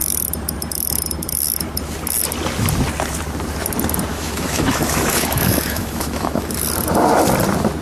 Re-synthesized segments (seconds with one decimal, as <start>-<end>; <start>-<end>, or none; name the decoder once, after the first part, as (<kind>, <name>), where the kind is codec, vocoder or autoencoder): 4.1-6.5 (autoencoder, DAC-VAE)